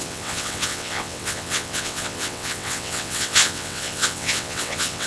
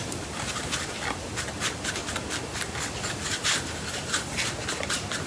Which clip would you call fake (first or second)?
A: first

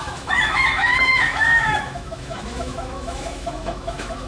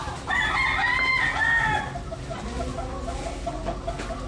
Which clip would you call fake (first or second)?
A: first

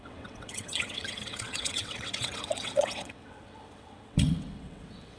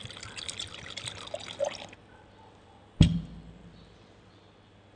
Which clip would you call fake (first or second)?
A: first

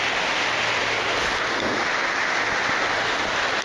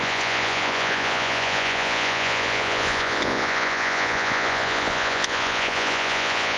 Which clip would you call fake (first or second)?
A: second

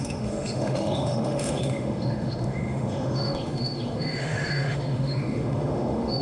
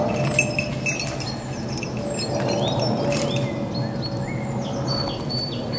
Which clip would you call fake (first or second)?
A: first